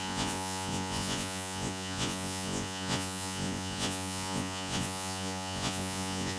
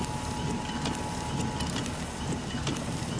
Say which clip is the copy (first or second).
first